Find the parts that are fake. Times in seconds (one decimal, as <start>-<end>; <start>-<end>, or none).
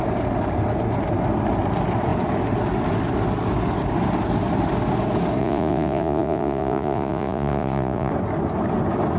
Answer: 5.4-8.1